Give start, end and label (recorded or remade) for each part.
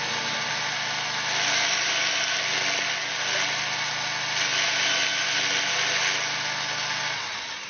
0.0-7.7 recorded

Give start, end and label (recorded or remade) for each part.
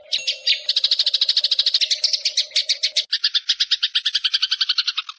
0.0-2.6 recorded; 2.6-3.1 remade; 3.1-5.2 recorded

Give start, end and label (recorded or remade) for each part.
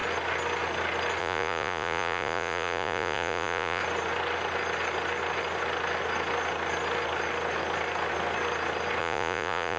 0.0-1.2 recorded; 1.2-3.8 remade; 3.8-9.0 recorded; 9.0-9.8 remade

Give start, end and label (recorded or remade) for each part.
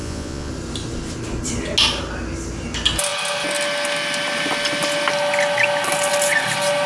0.0-0.5 remade; 0.5-6.9 recorded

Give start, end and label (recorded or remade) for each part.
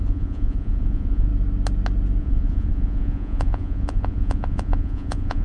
0.0-1.3 remade; 1.3-2.2 recorded; 2.2-5.4 remade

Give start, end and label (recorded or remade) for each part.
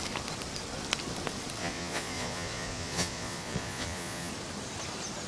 0.0-1.6 recorded; 1.6-4.3 remade; 4.3-5.3 recorded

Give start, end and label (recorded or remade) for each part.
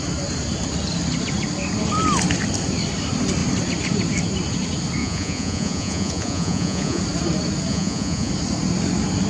0.0-5.0 recorded; 5.0-7.0 remade; 7.0-7.7 recorded; 7.7-8.3 remade; 8.3-9.3 recorded